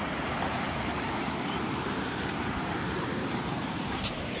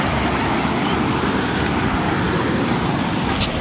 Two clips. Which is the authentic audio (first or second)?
second